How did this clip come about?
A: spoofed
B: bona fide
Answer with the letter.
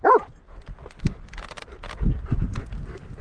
B